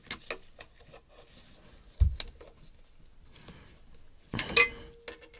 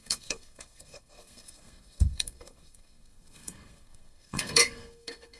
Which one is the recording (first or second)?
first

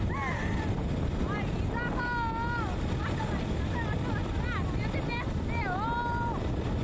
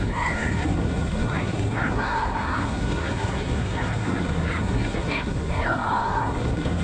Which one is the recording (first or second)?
first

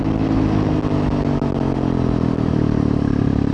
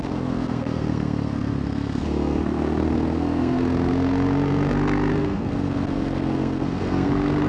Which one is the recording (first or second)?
first